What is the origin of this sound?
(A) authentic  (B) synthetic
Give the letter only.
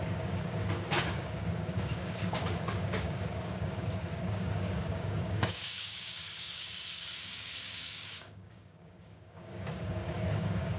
B